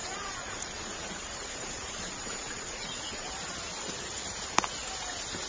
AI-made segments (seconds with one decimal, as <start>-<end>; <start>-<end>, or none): 0.0-3.3